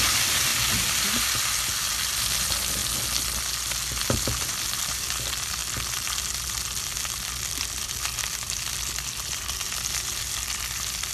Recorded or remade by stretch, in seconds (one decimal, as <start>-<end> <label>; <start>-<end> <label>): 0.0-0.5 remade; 0.5-1.9 recorded; 1.9-2.8 remade; 2.8-4.0 recorded; 4.0-11.1 remade